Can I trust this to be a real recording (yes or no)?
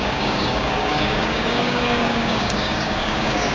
no